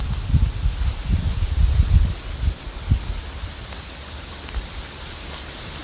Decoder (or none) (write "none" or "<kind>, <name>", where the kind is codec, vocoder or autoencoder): none